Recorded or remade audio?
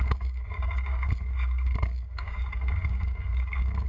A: remade